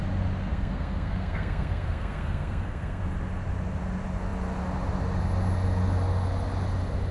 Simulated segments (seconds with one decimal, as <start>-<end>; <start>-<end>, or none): 0.5-3.0